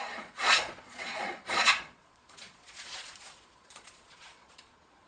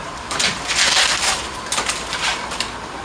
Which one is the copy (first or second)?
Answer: first